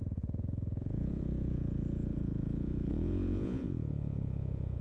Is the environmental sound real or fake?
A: fake